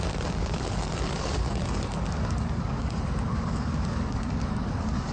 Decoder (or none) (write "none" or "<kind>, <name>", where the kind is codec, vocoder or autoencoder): codec, DAC